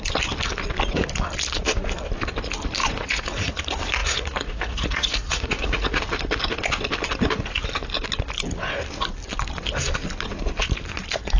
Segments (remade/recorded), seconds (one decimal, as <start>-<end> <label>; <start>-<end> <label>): 0.0-2.8 recorded; 2.8-3.5 remade; 3.5-4.0 recorded; 4.0-6.0 remade; 6.0-11.4 recorded